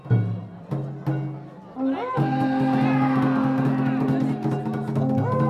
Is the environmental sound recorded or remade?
recorded